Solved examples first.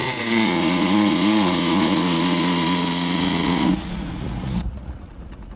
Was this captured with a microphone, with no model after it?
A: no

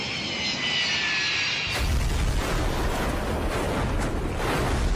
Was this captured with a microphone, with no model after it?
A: yes